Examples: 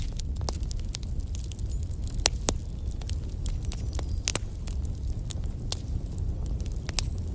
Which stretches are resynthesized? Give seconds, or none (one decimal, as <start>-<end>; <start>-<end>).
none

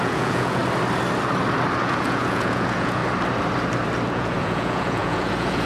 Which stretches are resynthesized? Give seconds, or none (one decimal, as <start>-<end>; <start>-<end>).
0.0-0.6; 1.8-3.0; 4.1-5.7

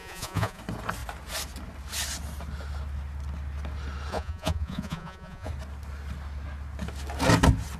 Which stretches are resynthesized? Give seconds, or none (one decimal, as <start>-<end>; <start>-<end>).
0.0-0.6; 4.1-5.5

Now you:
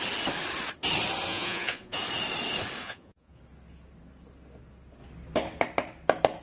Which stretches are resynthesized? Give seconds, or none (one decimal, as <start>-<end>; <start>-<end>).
1.3-2.0; 2.8-3.4

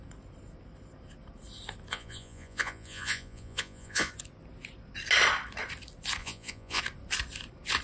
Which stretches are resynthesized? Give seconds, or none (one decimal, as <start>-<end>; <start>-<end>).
1.9-4.1; 6.2-6.8

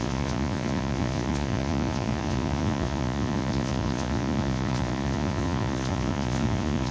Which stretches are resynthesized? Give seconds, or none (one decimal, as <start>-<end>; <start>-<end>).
0.0-6.9